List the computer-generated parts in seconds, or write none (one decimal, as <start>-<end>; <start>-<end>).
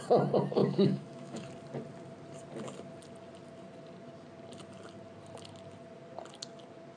0.6-1.4